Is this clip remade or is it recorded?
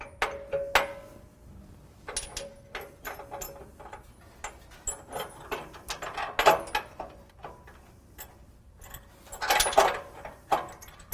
recorded